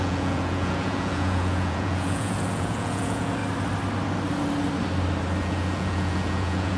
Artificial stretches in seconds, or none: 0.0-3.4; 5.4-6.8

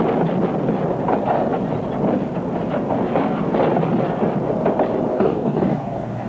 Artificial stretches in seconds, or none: 5.1-6.3

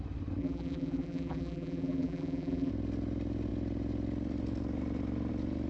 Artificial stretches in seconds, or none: 0.4-2.7

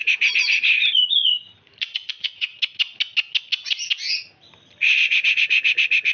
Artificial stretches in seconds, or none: 1.8-2.5

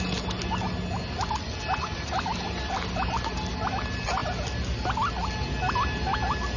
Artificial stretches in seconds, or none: none

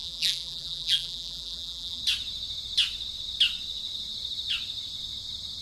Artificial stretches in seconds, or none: 0.0-2.0

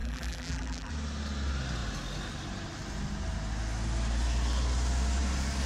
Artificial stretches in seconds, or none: 0.0-0.9